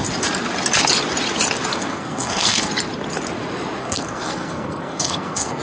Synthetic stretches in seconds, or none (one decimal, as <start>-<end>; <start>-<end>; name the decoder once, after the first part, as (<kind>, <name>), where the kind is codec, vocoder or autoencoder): 1.7-2.7 (codec, SNAC); 3.8-5.6